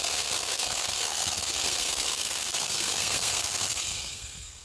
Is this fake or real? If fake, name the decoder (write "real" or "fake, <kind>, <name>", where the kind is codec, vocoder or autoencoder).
fake, codec, SNAC